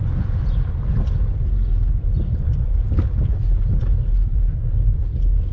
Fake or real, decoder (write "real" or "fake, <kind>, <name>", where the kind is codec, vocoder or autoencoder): real